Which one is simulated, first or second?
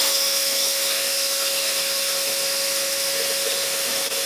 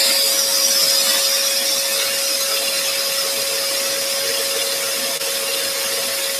first